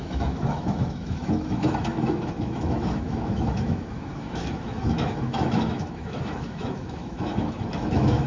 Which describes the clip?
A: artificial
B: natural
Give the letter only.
A